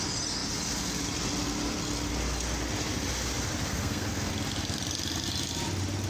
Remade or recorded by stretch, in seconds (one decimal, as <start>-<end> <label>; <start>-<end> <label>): 0.0-3.7 recorded; 3.7-4.3 remade; 4.3-6.1 recorded